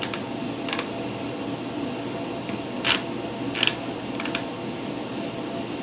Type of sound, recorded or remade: recorded